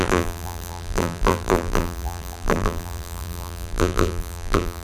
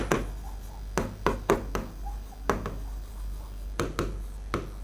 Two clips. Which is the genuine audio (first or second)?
second